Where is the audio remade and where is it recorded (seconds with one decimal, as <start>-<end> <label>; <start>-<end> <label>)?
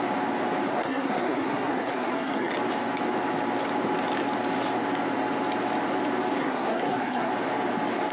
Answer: 0.0-0.7 recorded; 0.7-2.5 remade; 2.5-6.4 recorded; 6.4-7.3 remade; 7.3-8.1 recorded